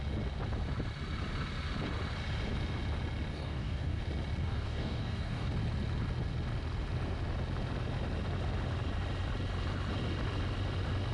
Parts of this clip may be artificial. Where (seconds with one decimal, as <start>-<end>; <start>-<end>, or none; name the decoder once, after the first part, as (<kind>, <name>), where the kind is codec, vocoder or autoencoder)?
3.3-4.0 (codec, DAC); 4.4-5.5